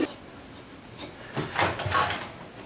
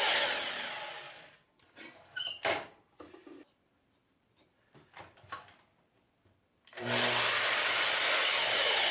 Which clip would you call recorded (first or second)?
first